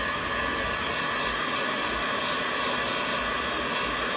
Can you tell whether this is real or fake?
real